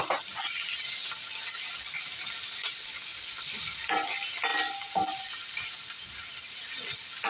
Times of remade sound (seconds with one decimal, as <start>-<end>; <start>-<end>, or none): 3.1-3.9; 4.5-6.5

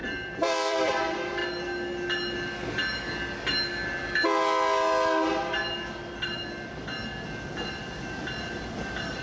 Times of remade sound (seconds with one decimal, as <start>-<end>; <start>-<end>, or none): 0.0-0.9; 7.8-9.2

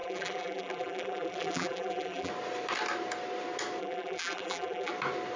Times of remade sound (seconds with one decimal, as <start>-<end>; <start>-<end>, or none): 0.0-2.3; 3.8-4.9

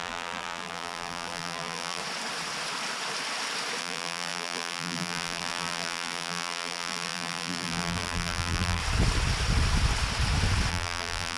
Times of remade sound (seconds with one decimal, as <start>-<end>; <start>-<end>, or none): 0.0-2.0; 3.8-8.8; 10.7-11.4

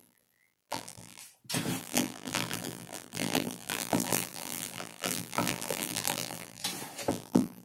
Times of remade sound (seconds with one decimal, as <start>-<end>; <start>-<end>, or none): 0.0-1.2; 1.8-6.6; 7.1-7.6

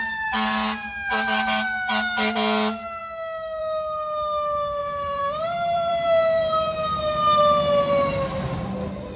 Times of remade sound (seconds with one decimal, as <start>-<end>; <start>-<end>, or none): 4.8-7.0

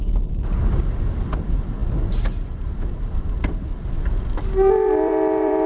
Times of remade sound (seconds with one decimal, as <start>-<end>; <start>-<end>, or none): 0.0-1.8; 2.6-3.7; 4.2-5.7